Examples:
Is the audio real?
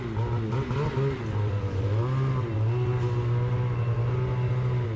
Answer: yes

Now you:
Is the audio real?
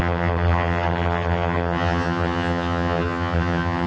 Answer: no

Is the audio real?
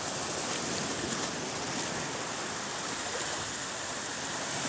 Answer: yes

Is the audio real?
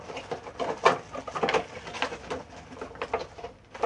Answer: yes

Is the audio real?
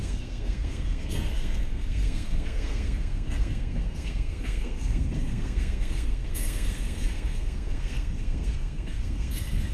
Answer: no